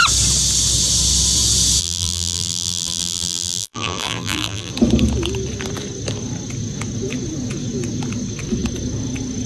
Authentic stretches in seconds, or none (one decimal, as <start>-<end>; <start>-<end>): 0.0-1.8; 4.7-9.5